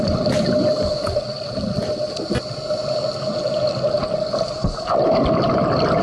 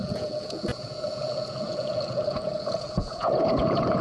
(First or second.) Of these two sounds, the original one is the first